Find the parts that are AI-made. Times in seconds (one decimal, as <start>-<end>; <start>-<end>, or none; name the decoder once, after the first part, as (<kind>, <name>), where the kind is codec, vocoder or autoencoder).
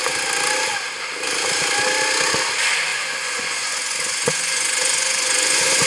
2.9-5.9 (vocoder, Vocos)